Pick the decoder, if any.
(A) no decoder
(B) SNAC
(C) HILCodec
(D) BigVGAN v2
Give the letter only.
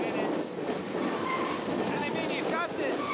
A